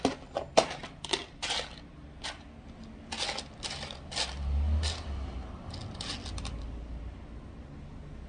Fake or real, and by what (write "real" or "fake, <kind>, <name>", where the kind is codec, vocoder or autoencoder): real